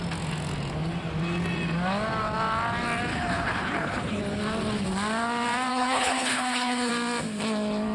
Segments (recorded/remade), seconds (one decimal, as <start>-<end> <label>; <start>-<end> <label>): 0.0-3.1 recorded; 3.1-4.2 remade; 4.2-5.7 recorded; 5.7-6.9 remade; 6.9-7.9 recorded